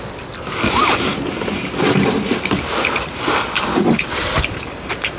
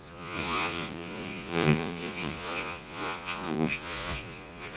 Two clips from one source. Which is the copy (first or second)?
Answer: second